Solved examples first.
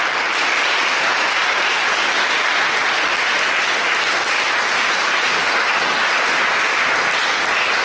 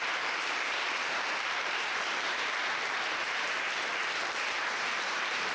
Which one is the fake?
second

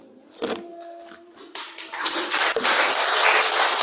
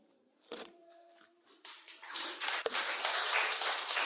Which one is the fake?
second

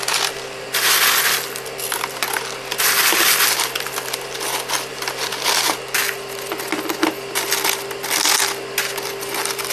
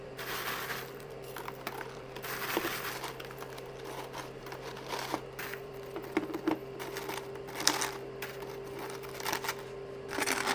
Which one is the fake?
second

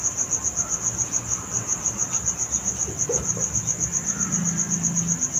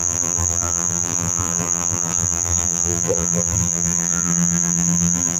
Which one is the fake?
second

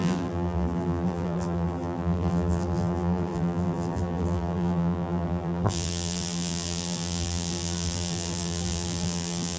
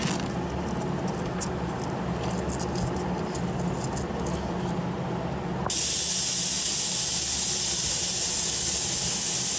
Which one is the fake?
first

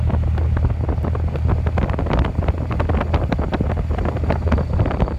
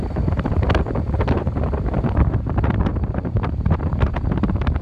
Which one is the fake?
second